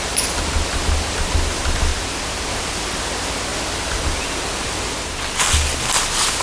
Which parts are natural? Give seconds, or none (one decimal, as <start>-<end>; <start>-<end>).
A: 0.0-6.4